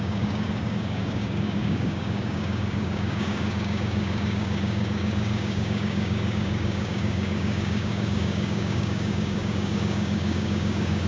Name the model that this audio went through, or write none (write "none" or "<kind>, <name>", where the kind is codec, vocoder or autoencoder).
codec, DAC